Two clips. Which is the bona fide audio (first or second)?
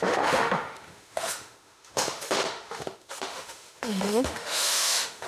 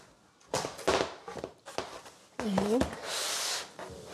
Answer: second